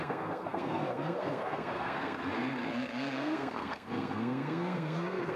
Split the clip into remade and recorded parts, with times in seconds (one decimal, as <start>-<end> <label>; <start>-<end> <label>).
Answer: 0.0-5.4 remade